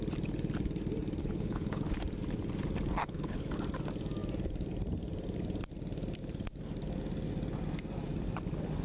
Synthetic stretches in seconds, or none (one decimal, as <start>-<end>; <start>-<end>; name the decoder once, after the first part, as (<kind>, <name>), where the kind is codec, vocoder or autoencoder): 1.2-1.8 (codec, HILCodec); 3.0-3.5